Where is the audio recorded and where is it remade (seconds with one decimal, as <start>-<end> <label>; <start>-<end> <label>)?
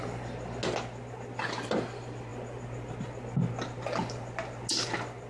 0.0-5.3 recorded